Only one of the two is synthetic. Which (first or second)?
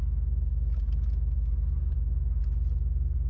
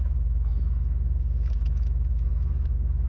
second